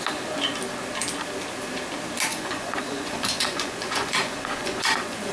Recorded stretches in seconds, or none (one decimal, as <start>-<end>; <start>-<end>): 0.0-2.3